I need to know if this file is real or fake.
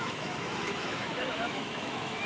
fake